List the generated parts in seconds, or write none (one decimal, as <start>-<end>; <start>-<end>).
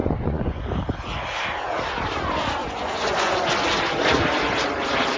0.0-0.6; 2.6-3.3